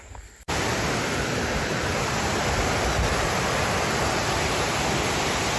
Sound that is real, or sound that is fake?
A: real